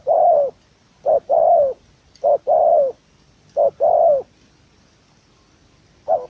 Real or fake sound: real